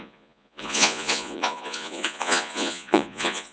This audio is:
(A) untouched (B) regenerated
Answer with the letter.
B